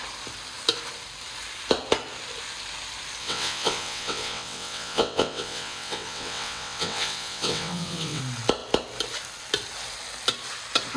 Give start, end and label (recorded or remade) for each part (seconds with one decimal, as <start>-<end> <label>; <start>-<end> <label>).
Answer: 0.0-3.2 recorded; 3.2-8.2 remade; 8.2-11.0 recorded